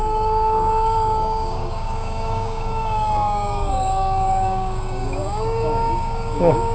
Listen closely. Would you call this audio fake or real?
fake